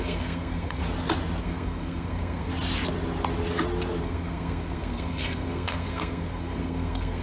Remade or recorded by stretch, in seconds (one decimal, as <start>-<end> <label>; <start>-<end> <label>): 0.0-0.8 remade; 0.8-1.4 recorded; 1.4-2.5 remade; 2.5-4.0 recorded; 4.0-7.2 remade